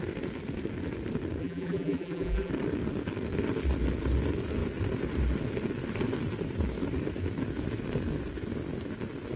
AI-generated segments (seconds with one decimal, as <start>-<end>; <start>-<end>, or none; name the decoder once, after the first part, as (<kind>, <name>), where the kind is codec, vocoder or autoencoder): 1.4-2.5 (vocoder, BigVGAN v2)